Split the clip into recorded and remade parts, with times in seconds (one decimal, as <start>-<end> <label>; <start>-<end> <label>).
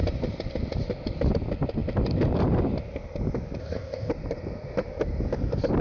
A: 0.0-3.6 recorded; 3.6-4.1 remade; 4.1-5.8 recorded